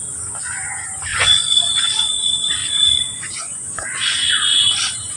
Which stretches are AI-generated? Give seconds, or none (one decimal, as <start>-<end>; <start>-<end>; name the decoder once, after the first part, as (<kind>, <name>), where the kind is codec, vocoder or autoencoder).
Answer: 1.1-2.0 (vocoder, Vocos); 2.6-4.3